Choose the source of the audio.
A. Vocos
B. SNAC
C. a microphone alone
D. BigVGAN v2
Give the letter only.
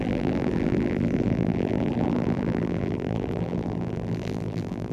D